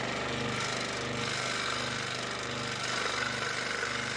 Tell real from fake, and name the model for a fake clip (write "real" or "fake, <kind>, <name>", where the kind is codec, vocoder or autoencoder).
real